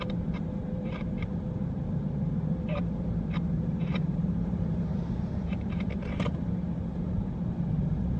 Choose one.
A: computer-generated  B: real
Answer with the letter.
A